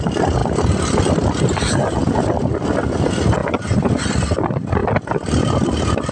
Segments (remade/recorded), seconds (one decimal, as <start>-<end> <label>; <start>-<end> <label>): 0.0-4.8 recorded; 4.8-6.1 remade